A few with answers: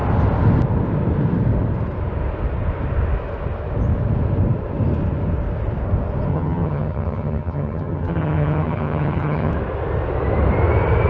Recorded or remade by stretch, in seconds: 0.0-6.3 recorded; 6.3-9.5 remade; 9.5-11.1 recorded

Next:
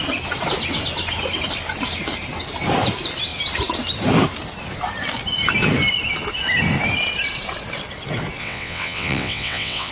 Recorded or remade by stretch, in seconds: 0.0-8.4 recorded; 8.4-9.9 remade

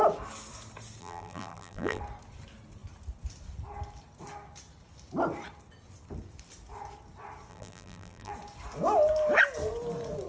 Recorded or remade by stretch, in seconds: 0.0-1.0 recorded; 1.0-2.0 remade; 2.0-7.5 recorded; 7.5-8.3 remade; 8.3-10.3 recorded

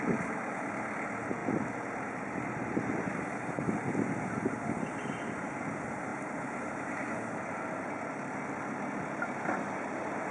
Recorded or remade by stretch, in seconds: 0.0-10.3 recorded

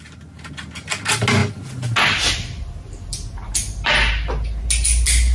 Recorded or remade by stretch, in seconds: 0.0-5.3 recorded

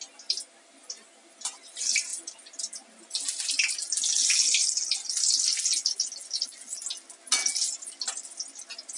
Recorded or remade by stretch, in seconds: 0.0-9.0 recorded

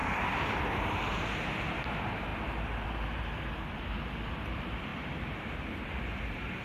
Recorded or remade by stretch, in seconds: 0.0-0.6 recorded; 0.6-6.6 remade